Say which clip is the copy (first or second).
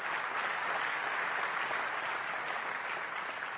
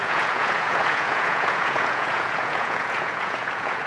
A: second